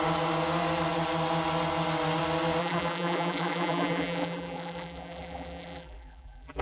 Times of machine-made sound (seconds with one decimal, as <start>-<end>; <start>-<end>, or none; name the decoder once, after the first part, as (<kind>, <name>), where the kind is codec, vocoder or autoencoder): 2.6-6.6 (vocoder, BigVGAN v2)